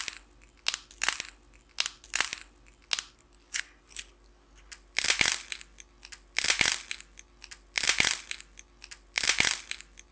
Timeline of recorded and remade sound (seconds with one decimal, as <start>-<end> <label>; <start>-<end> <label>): 0.0-10.1 recorded